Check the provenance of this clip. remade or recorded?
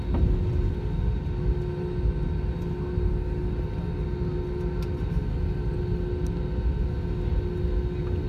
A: recorded